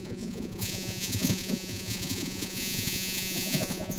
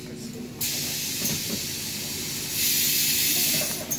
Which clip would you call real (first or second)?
second